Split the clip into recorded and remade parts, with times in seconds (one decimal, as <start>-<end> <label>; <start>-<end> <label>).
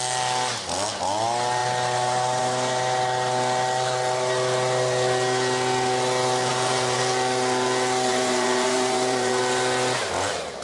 0.0-6.5 recorded; 6.5-7.0 remade; 7.0-8.1 recorded; 8.1-9.4 remade; 9.4-10.6 recorded